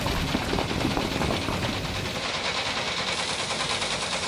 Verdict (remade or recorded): recorded